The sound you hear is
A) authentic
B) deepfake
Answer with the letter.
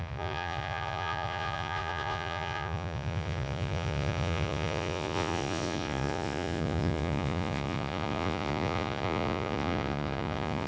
B